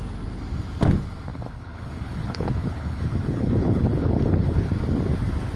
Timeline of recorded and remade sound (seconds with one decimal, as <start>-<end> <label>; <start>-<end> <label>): 0.0-1.3 recorded; 1.3-4.7 remade; 4.7-5.6 recorded